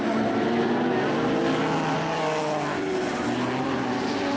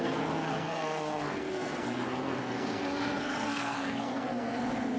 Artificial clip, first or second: second